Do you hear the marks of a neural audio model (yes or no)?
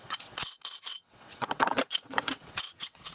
yes